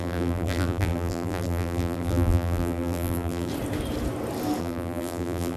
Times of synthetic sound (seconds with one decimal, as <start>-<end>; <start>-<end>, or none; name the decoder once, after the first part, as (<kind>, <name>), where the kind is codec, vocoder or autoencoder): 0.0-3.5 (vocoder, BigVGAN v2); 4.6-5.6